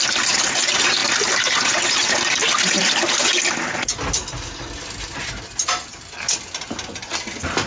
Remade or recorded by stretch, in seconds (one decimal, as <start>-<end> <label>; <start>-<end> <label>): 0.0-7.7 recorded